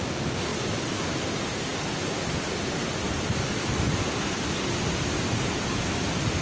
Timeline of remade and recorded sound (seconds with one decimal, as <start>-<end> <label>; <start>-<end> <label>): 0.0-6.4 recorded